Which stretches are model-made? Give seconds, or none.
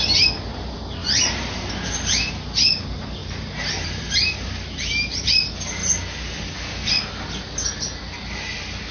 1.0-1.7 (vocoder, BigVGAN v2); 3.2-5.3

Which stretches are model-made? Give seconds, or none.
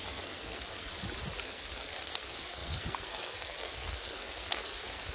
0.0-0.9 (codec, SNAC); 1.4-5.1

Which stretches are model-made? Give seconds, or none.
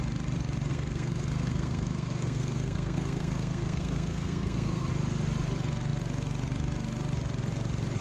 0.7-4.9 (codec, SNAC)